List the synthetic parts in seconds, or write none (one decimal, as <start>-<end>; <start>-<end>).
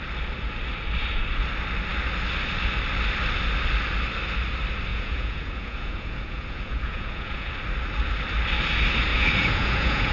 4.9-7.5; 9.1-10.1